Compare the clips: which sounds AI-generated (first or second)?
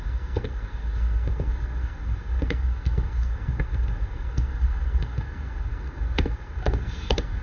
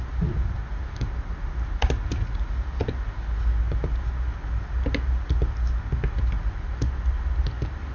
first